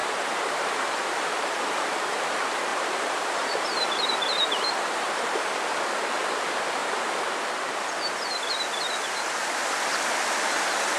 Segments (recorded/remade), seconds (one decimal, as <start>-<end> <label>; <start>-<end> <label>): 0.0-0.7 remade; 0.7-2.7 recorded; 2.7-5.3 remade; 5.3-11.0 recorded